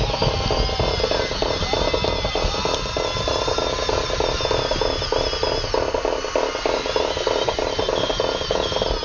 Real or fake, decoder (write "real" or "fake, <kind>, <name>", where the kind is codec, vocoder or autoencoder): real